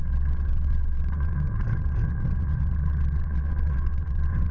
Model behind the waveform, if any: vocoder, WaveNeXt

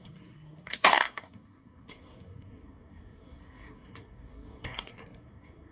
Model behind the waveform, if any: codec, SNAC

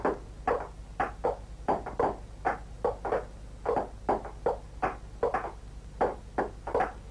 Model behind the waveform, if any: none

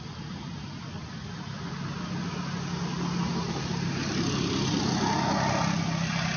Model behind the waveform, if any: none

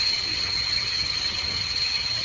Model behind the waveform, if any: vocoder, HiFi-GAN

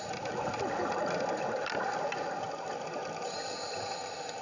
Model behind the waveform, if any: none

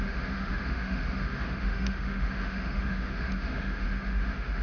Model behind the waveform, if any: autoencoder, DAC-VAE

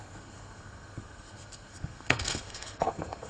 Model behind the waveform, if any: codec, SNAC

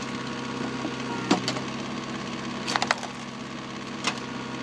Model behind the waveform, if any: none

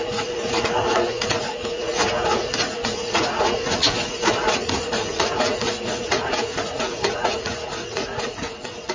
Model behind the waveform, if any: vocoder, Vocos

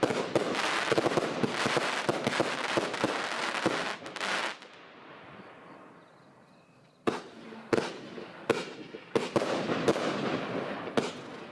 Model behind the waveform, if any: none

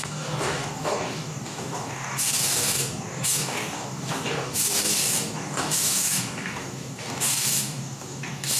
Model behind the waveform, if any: codec, DAC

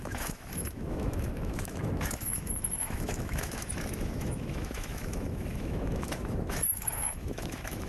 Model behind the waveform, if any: autoencoder, DAC-VAE